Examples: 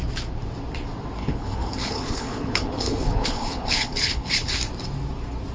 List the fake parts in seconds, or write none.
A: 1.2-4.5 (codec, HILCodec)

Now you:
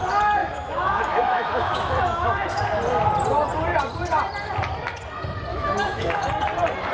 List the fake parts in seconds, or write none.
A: 0.4-2.6 (autoencoder, DAC-VAE); 5.5-6.3